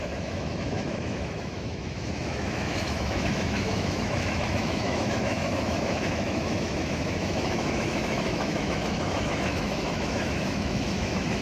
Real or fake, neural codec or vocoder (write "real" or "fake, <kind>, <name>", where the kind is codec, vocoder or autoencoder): fake, autoencoder, DAC-VAE